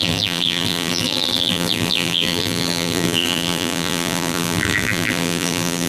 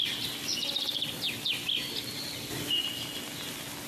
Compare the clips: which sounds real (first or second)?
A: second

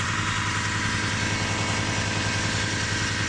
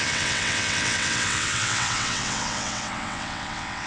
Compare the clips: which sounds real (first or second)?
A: first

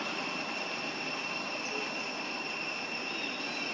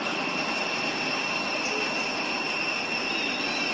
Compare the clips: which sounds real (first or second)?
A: second